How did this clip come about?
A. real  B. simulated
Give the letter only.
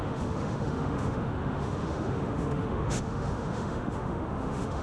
B